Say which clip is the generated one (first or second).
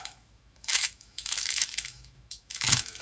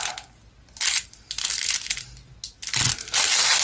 first